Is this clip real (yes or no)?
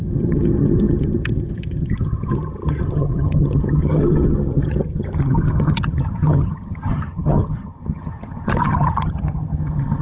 no